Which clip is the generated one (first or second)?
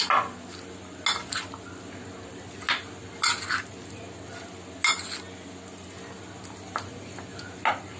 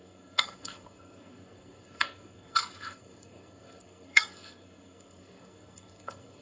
second